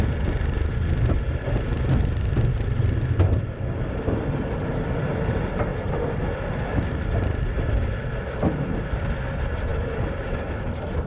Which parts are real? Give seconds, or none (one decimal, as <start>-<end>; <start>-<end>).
0.0-11.1